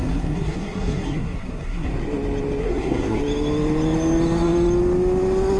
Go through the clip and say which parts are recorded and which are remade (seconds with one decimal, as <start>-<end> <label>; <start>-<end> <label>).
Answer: 0.0-1.9 remade; 1.9-2.6 recorded; 2.6-3.2 remade; 3.2-5.6 recorded